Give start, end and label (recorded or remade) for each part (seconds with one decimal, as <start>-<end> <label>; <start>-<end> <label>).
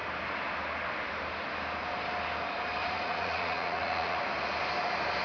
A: 0.0-2.8 recorded; 2.8-4.2 remade; 4.2-5.2 recorded